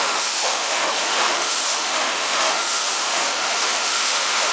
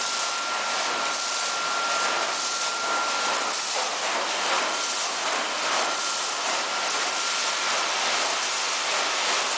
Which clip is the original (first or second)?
second